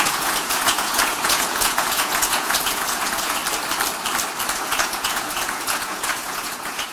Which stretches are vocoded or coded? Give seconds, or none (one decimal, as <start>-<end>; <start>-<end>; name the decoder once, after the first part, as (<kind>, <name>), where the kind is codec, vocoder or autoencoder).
0.0-3.4 (vocoder, Vocos); 4.5-6.9